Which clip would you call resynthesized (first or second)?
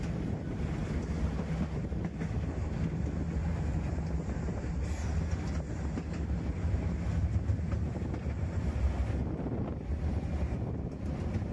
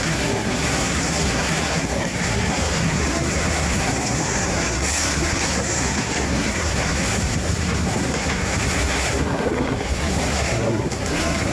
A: second